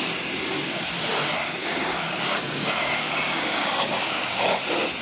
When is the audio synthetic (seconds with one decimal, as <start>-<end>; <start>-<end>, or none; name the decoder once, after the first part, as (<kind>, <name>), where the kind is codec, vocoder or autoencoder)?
1.6-4.6 (codec, DAC)